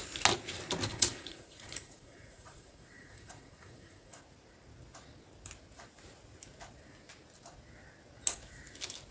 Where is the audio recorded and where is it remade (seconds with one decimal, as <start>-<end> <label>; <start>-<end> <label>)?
0.0-0.9 recorded; 0.9-4.2 remade; 4.2-9.1 recorded

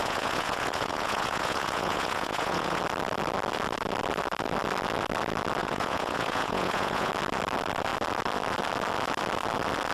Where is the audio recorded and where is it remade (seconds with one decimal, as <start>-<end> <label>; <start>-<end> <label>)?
0.0-2.8 remade; 2.8-5.6 recorded; 5.6-7.1 remade; 7.1-9.9 recorded

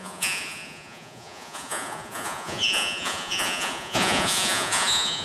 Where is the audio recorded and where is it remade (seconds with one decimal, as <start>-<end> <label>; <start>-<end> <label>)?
0.0-5.2 remade

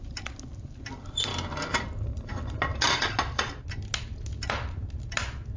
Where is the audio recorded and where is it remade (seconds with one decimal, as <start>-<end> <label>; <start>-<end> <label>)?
0.0-5.6 recorded